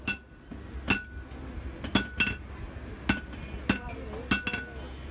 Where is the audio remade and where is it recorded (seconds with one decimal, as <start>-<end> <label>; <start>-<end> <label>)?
0.0-5.1 recorded